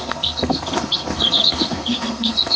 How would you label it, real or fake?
fake